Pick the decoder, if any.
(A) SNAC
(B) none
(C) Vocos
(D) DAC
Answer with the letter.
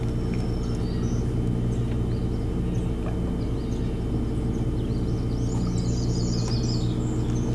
B